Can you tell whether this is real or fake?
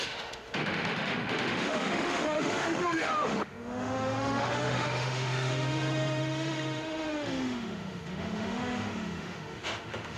fake